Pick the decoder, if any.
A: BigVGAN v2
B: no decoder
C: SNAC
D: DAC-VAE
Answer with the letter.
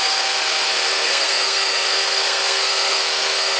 C